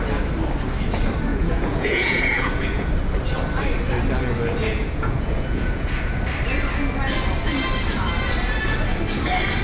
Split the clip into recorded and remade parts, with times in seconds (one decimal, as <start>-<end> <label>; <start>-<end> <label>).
0.0-1.3 recorded; 1.3-2.9 remade; 2.9-4.6 recorded; 4.6-6.2 remade; 6.2-9.6 recorded